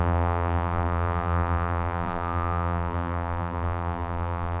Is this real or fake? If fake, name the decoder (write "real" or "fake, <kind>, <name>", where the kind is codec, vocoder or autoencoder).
fake, vocoder, BigVGAN v2